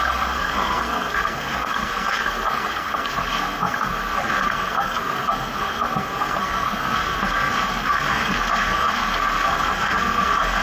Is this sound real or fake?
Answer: fake